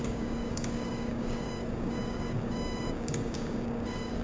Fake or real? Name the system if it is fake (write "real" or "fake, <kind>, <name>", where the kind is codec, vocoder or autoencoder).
fake, codec, DAC